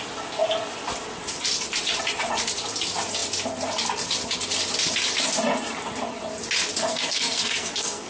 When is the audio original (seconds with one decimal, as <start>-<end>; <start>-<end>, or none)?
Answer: 0.0-6.9